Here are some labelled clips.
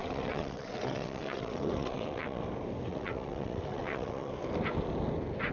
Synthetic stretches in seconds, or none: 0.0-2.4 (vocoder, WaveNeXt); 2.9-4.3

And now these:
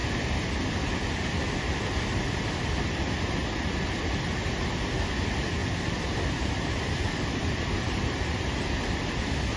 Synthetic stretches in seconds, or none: 5.6-7.5 (vocoder, BigVGAN v2)

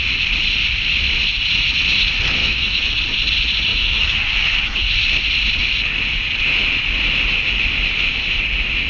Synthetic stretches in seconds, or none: 2.4-2.9 (autoencoder, DAC-VAE); 3.7-4.9

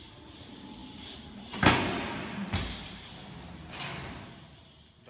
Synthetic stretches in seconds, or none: none

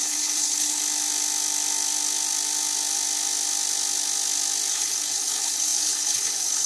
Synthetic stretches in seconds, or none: 0.0-0.8 (codec, HILCodec); 4.7-6.7

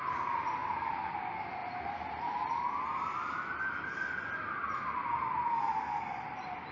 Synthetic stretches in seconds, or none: 0.6-1.1 (vocoder, BigVGAN v2); 1.6-2.5; 4.6-5.2